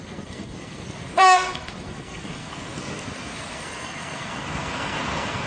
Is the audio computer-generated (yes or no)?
yes